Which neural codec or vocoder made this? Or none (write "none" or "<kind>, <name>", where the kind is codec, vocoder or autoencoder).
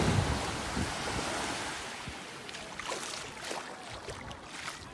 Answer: none